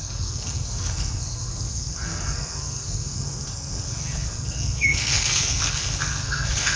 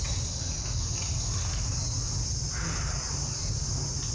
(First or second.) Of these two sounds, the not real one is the first